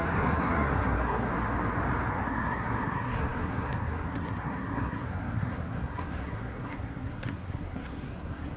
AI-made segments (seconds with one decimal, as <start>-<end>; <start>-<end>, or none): 0.0-1.3; 2.1-8.6